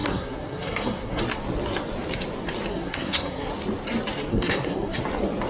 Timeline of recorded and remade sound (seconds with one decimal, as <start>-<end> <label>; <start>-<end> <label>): 0.0-1.2 remade; 1.2-2.7 recorded; 2.7-3.5 remade; 3.5-4.3 recorded; 4.3-5.0 remade; 5.0-5.5 recorded